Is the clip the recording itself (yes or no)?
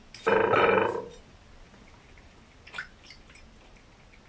yes